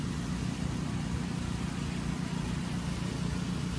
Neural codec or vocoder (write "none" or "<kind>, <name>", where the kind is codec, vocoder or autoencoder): none